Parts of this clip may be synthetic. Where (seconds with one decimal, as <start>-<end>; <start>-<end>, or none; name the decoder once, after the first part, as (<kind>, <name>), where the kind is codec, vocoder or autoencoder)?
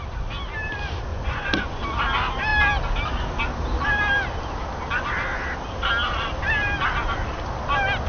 1.1-1.8 (vocoder, Vocos)